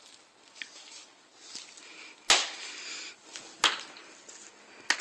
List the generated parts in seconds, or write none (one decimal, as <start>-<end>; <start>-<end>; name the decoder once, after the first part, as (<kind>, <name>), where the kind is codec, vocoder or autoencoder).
none